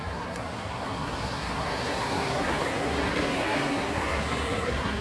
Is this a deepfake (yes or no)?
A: yes